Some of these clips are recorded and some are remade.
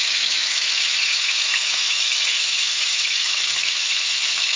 remade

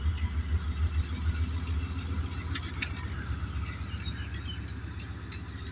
recorded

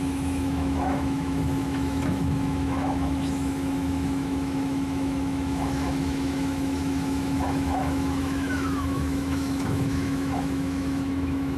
remade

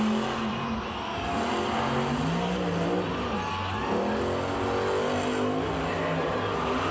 recorded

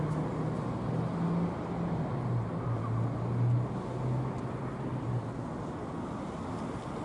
recorded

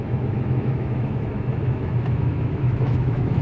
remade